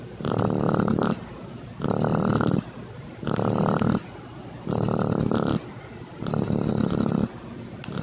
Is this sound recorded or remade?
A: recorded